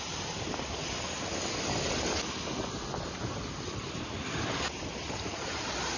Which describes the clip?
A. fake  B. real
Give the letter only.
B